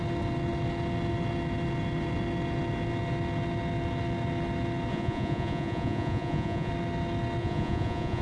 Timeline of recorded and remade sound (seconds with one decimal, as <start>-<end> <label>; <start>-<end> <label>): 0.0-4.9 recorded; 4.9-6.7 remade; 6.7-7.4 recorded; 7.4-8.2 remade